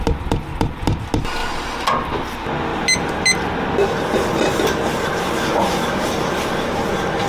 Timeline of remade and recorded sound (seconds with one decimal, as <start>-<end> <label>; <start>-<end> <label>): 0.0-7.3 recorded